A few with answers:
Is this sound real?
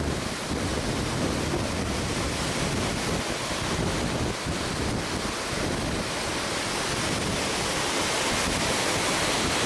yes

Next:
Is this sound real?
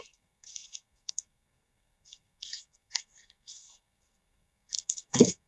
no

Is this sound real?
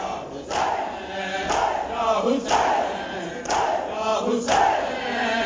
yes